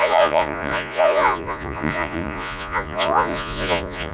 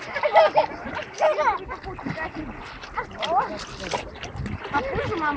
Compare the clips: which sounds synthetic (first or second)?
first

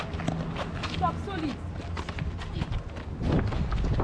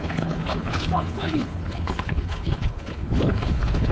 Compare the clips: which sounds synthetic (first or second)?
second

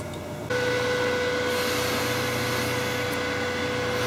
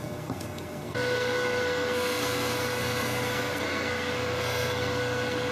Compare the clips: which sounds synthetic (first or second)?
second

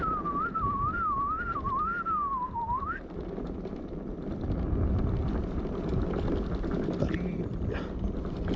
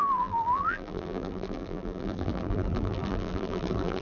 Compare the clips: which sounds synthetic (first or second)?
second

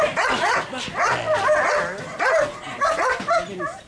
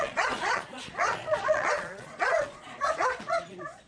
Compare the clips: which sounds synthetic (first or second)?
second